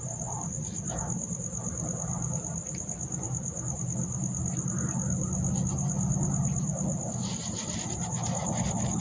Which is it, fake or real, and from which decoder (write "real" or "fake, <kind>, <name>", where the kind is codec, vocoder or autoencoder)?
real